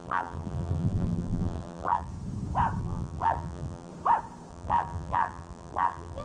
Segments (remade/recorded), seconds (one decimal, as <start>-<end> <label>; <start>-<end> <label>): 0.0-2.1 remade; 2.1-2.8 recorded; 2.8-3.9 remade; 3.9-4.5 recorded; 4.5-6.2 remade